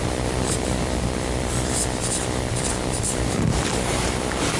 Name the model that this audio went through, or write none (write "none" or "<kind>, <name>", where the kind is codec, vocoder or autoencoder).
vocoder, BigVGAN v2